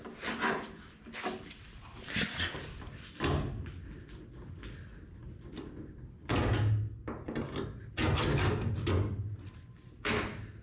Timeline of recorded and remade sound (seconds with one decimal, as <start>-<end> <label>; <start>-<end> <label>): 0.0-10.6 recorded